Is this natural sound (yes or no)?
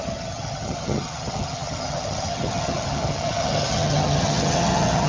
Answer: no